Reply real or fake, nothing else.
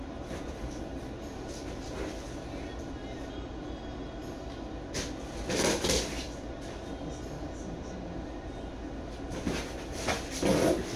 real